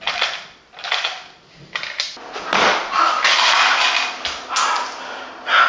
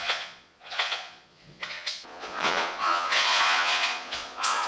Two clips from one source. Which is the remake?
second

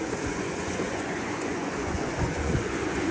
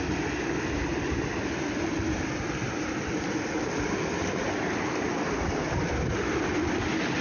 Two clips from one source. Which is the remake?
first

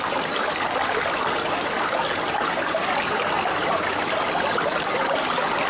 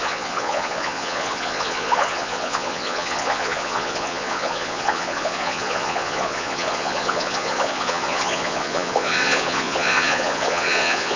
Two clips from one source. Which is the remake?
second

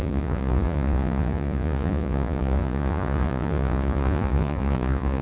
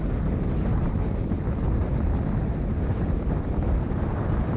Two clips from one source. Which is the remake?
first